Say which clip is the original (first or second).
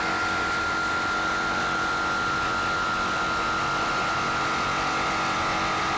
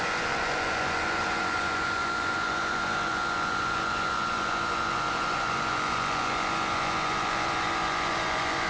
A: first